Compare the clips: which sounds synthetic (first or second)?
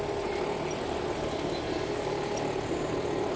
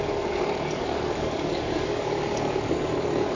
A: second